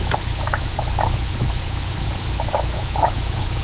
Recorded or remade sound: recorded